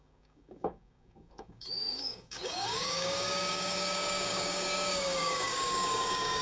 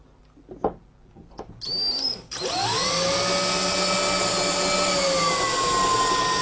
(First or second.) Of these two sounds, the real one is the second